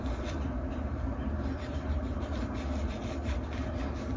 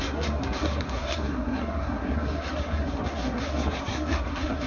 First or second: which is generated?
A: second